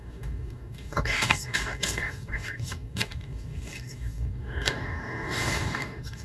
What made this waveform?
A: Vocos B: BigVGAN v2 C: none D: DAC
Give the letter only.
D